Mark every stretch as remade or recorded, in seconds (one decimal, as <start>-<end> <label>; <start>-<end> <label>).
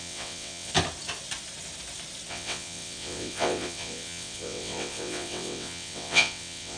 0.0-0.7 remade; 0.7-2.3 recorded; 2.3-6.8 remade